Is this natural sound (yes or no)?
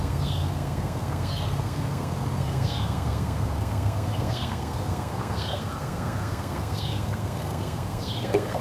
no